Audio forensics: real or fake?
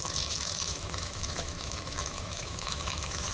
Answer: fake